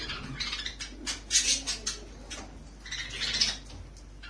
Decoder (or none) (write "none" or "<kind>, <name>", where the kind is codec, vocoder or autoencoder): none